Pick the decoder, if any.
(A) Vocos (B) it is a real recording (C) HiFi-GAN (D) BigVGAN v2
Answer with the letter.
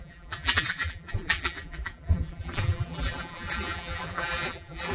D